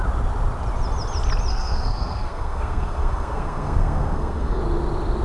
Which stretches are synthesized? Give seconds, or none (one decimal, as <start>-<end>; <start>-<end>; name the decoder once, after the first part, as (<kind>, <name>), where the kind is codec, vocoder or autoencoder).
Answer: 1.5-4.6 (codec, SNAC)